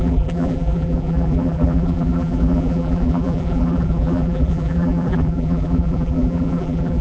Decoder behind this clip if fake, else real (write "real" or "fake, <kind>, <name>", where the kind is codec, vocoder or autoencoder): fake, vocoder, BigVGAN v2